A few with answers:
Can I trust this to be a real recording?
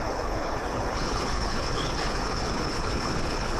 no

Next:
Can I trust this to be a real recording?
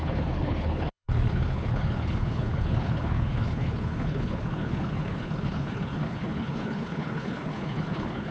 no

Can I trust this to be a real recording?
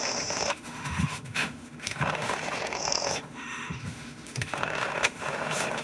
no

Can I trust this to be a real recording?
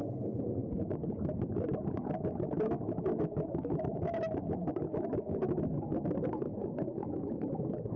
no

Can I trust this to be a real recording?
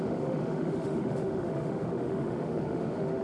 no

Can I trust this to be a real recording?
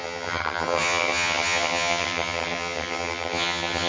no